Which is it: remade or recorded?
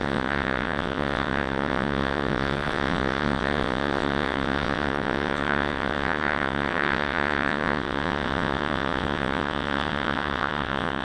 remade